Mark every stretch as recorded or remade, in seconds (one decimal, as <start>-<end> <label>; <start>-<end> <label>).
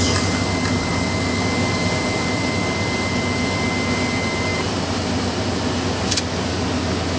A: 0.0-7.2 recorded